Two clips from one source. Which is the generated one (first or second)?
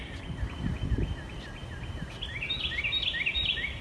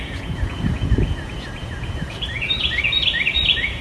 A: second